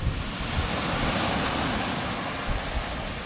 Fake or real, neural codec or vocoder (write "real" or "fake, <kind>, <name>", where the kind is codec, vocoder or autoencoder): real